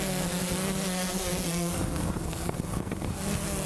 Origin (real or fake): fake